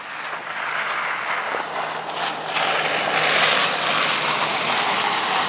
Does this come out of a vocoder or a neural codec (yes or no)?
no